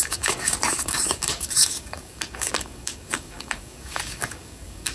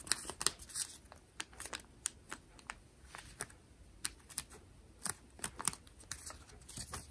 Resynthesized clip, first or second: first